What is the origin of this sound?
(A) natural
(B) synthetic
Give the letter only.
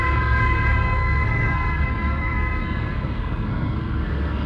B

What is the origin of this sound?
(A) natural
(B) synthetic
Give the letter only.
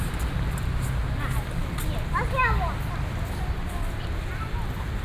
A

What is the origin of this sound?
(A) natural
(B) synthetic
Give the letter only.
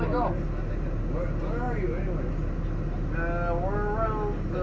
A